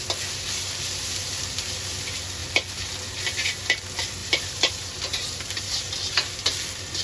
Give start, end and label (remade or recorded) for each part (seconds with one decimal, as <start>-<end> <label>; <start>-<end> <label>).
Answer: 0.0-4.2 recorded; 4.2-5.8 remade; 5.8-7.0 recorded